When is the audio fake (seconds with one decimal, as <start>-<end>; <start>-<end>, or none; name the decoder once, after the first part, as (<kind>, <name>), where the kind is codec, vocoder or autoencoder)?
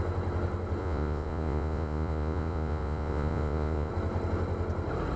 0.8-3.9 (vocoder, Vocos)